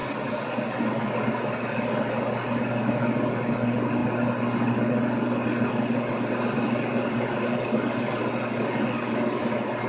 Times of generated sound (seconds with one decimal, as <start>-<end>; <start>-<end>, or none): none